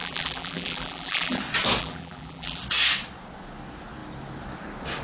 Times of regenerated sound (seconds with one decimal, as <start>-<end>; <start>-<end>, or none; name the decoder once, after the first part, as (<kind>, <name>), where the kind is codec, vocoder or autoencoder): 0.0-1.4 (vocoder, BigVGAN v2); 1.8-2.6